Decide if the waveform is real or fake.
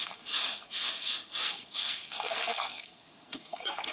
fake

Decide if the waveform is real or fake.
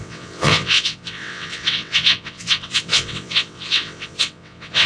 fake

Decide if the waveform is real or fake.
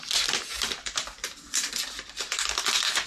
fake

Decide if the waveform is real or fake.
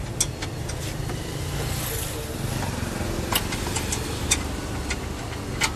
real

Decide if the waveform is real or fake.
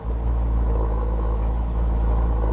fake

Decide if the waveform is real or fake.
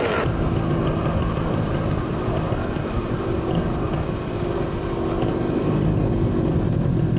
real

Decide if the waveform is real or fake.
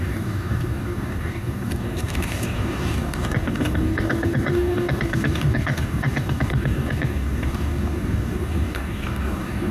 fake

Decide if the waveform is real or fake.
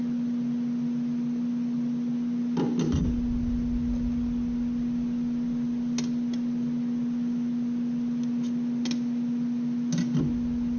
real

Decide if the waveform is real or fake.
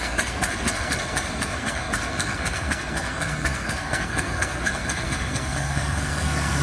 fake